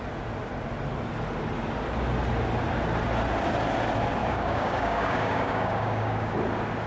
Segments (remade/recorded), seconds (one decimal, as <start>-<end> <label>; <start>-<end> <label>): 0.0-4.2 recorded; 4.2-6.3 remade; 6.3-6.9 recorded